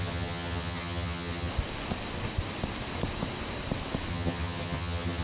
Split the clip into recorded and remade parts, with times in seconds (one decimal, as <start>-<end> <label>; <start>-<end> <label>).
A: 0.0-1.5 remade; 1.5-4.1 recorded; 4.1-5.2 remade